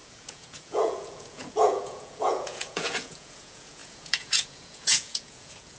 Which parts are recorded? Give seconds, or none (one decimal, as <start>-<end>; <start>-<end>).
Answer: none